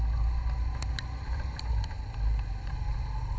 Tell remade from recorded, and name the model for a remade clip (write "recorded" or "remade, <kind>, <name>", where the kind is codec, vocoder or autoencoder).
recorded